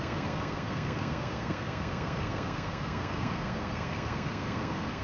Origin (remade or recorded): remade